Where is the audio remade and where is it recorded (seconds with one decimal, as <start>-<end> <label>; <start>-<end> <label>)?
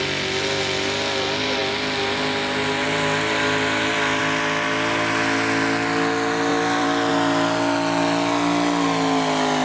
0.0-6.5 recorded; 6.5-7.1 remade; 7.1-9.6 recorded